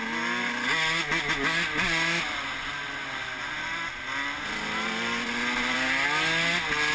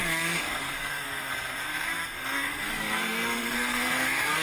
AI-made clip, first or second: second